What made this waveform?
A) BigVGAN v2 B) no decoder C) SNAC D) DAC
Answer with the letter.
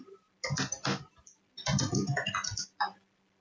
A